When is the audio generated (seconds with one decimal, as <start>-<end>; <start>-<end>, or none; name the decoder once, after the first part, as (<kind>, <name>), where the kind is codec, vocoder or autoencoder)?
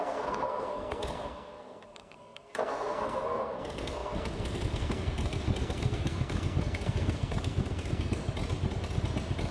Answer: 0.0-8.2 (codec, SNAC)